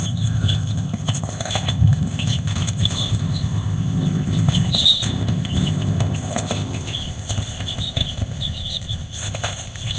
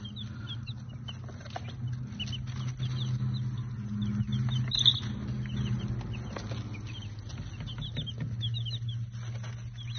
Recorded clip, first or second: second